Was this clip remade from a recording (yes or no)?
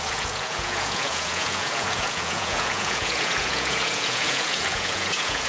yes